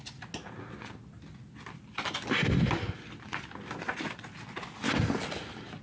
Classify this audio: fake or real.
real